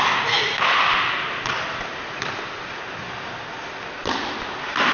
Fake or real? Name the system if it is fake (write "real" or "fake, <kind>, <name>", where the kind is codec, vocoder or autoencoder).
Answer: real